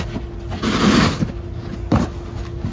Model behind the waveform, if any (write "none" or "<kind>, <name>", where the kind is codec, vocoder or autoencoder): none